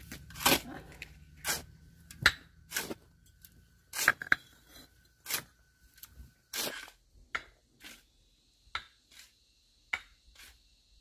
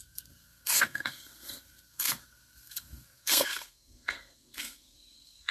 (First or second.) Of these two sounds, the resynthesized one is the second